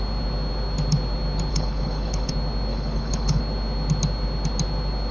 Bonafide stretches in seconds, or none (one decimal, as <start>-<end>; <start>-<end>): 0.0-1.5; 2.3-2.7; 3.4-5.1

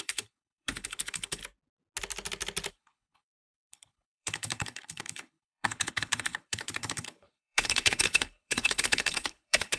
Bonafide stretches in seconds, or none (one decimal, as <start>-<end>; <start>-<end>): 1.4-2.7